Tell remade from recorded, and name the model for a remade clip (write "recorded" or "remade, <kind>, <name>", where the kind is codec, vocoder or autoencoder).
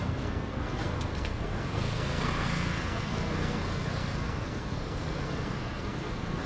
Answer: remade, codec, SNAC